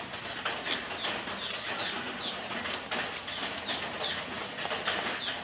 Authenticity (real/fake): real